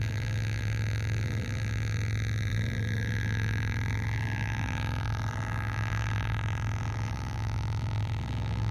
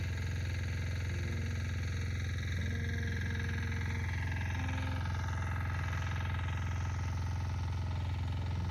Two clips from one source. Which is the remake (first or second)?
first